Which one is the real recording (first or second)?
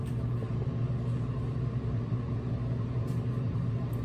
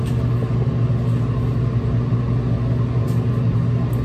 second